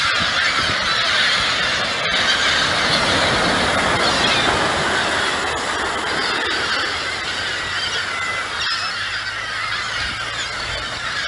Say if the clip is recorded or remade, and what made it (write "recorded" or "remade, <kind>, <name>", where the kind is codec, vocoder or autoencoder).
recorded